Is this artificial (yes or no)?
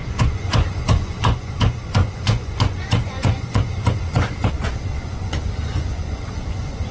yes